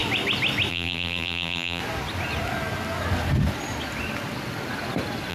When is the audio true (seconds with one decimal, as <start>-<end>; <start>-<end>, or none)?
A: 0.0-0.7; 1.8-5.3